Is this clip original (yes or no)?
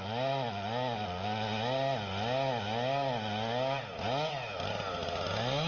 yes